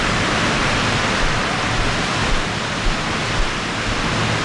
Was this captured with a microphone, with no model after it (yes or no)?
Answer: yes